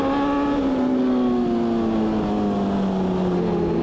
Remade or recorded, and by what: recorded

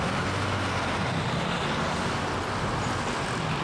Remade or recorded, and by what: recorded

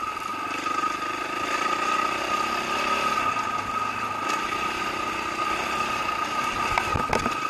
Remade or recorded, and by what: recorded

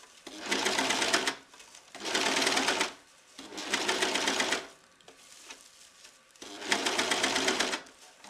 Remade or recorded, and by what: recorded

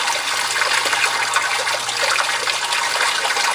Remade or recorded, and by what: recorded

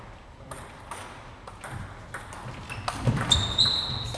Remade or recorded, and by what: recorded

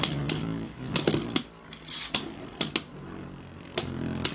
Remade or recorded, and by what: recorded